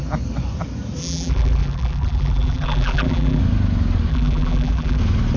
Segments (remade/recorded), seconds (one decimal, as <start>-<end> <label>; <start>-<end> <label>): 0.0-1.0 recorded; 1.0-3.4 remade; 3.4-4.1 recorded; 4.1-5.0 remade; 5.0-5.4 recorded